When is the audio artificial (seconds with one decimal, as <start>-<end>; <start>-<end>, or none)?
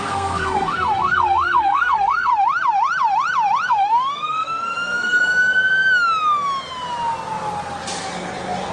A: 0.0-2.3; 3.7-5.2